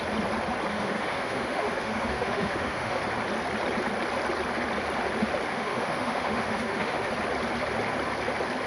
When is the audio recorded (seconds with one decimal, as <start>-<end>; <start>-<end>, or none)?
0.0-0.7; 3.0-5.5; 7.1-8.7